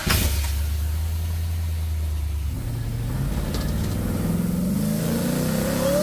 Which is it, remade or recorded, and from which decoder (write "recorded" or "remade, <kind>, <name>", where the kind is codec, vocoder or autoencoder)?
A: recorded